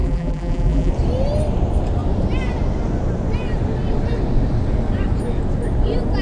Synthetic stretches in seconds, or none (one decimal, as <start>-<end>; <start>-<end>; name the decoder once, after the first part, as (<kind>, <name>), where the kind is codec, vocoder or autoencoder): 0.0-0.9 (vocoder, BigVGAN v2)